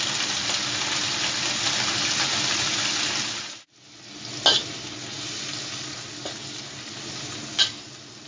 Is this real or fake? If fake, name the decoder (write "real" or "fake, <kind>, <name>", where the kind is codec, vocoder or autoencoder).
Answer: real